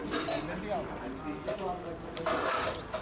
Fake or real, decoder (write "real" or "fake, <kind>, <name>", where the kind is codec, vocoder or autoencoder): real